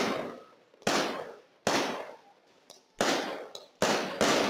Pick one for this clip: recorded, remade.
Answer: recorded